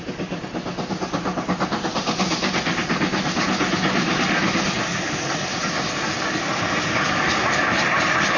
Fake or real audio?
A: real